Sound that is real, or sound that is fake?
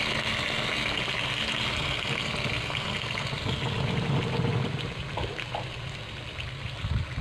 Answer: real